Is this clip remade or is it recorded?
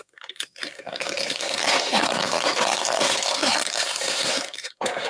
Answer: remade